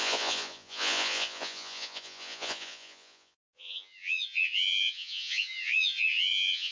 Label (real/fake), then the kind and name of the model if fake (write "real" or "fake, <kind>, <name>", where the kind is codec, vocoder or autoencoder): fake, vocoder, Vocos